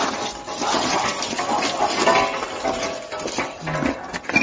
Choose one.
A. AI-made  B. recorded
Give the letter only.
B